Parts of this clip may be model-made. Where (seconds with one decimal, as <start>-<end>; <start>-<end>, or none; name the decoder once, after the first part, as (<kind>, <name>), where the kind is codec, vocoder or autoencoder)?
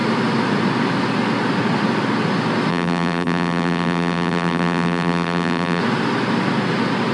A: 2.7-5.8 (vocoder, BigVGAN v2)